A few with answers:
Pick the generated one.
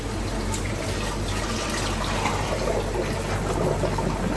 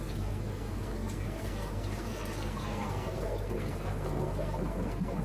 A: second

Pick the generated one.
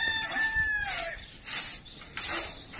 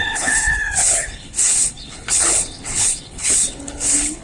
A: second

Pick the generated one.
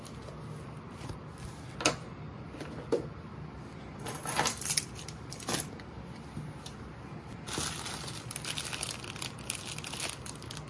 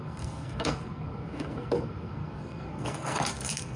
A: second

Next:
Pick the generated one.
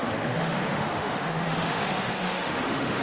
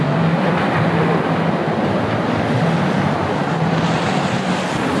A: first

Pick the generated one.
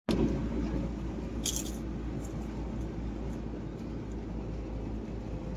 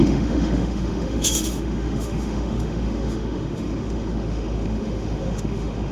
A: second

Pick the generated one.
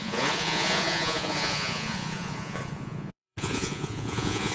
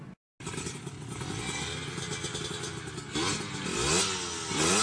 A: first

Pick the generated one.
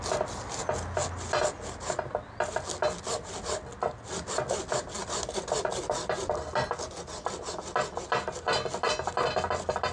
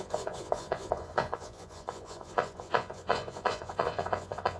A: second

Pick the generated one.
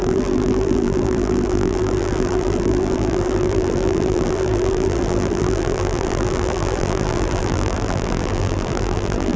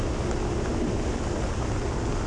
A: first